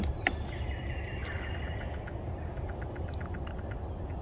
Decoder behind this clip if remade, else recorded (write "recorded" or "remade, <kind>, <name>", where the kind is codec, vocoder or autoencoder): recorded